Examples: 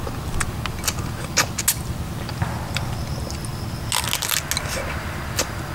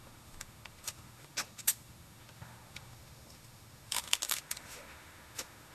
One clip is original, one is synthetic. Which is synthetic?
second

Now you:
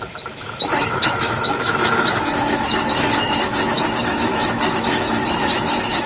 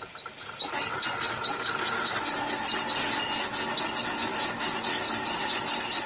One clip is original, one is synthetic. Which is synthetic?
first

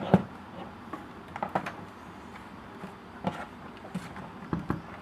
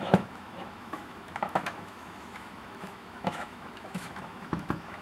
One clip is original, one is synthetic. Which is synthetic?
second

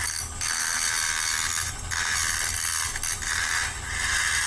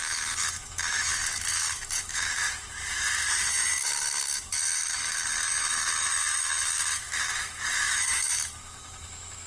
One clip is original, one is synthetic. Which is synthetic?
second